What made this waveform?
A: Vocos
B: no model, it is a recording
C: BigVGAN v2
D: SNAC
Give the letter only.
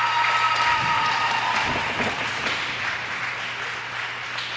B